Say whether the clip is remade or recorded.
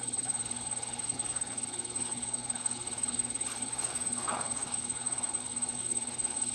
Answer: remade